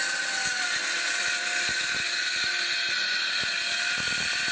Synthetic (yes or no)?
no